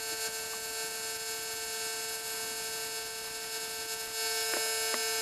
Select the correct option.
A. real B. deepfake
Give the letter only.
A